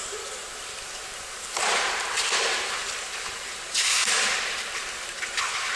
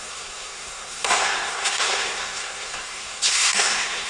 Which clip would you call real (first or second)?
first